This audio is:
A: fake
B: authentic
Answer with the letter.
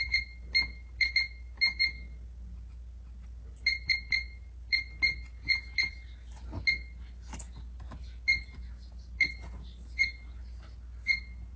B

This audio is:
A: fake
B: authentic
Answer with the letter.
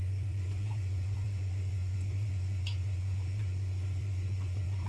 A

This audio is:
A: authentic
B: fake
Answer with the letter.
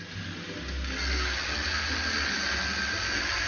A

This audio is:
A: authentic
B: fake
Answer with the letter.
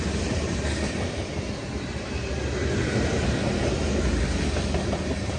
A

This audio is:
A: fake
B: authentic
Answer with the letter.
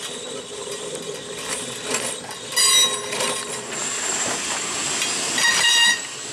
B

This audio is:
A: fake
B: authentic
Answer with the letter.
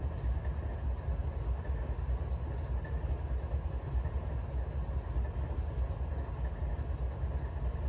B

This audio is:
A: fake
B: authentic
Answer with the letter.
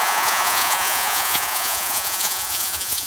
A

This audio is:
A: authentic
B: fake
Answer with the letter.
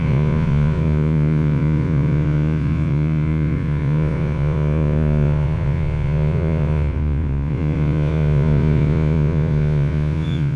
B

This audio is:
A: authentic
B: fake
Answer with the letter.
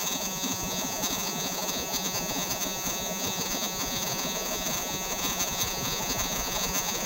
B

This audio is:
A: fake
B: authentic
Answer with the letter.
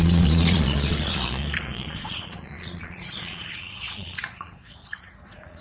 A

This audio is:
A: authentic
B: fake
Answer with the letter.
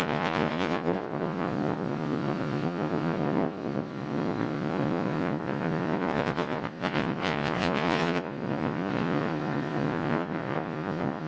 B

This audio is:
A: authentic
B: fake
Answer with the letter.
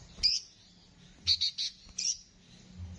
A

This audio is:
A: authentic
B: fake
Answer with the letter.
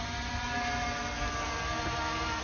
A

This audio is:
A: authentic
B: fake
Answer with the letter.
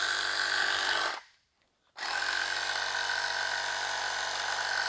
A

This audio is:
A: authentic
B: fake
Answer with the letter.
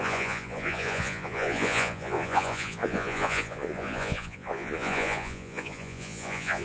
B